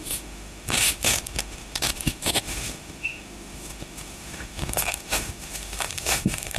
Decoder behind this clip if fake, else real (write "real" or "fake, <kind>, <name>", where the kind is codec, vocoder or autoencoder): fake, autoencoder, DAC-VAE